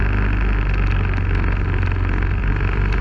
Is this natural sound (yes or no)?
yes